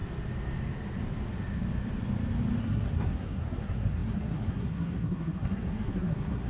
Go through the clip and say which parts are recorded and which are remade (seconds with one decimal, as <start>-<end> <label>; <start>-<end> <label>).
0.0-2.6 recorded; 2.6-6.5 remade